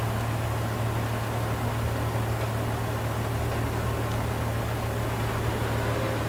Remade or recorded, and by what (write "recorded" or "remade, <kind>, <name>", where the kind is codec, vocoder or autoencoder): recorded